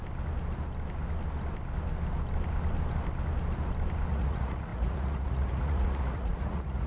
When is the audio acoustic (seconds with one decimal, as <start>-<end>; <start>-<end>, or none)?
0.0-4.1